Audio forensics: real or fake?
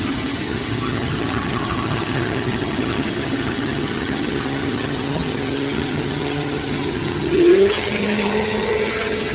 fake